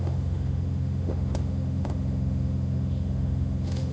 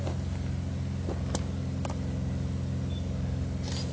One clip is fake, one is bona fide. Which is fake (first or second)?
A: first